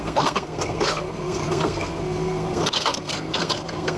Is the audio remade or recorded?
remade